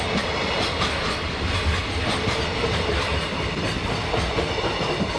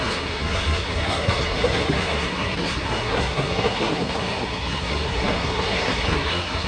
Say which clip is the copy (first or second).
second